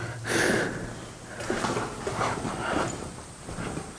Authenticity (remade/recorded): recorded